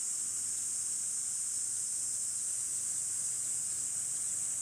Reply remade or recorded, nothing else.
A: recorded